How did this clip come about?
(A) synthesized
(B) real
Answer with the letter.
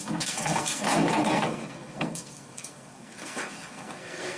A